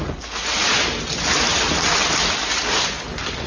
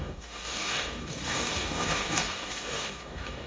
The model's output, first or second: second